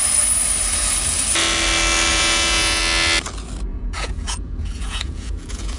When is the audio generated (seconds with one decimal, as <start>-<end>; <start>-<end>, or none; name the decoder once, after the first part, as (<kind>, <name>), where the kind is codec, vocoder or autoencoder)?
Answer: 2.1-2.8 (vocoder, Vocos); 3.7-5.8

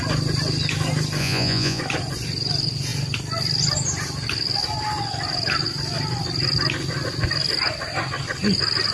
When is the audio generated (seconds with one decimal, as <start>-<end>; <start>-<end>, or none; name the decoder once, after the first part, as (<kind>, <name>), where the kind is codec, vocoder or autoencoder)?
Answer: 1.2-1.8 (vocoder, Vocos)

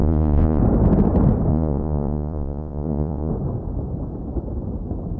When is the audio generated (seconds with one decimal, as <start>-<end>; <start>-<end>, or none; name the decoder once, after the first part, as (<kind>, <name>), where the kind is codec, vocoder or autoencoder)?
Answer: 0.0-0.6 (vocoder, Vocos); 1.5-3.3

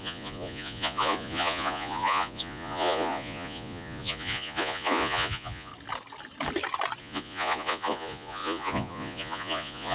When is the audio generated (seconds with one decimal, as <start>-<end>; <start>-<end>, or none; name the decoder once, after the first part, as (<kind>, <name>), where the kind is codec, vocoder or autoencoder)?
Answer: 0.0-5.7 (vocoder, Vocos); 7.0-9.9

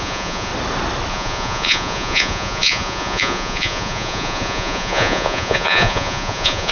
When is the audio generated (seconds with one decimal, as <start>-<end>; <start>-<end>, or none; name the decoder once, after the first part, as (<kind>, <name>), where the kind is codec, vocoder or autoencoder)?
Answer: 0.0-0.5 (vocoder, Vocos); 1.1-6.7

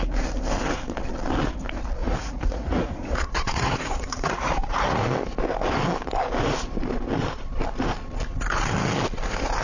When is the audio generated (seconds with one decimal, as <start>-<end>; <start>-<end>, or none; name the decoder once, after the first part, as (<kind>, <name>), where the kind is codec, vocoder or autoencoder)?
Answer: 2.0-5.0 (vocoder, Vocos)

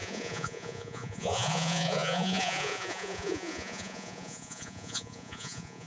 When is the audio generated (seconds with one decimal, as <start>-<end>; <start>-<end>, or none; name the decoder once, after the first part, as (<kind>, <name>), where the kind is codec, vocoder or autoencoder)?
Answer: 0.0-5.9 (vocoder, Vocos)

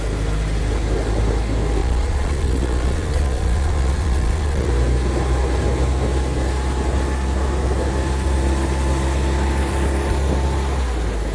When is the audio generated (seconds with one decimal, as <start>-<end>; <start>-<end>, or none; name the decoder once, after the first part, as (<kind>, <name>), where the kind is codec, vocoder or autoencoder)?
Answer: 1.8-4.7 (vocoder, Vocos)